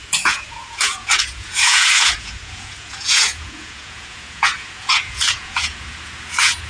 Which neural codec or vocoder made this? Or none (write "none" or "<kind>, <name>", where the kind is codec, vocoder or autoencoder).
vocoder, Vocos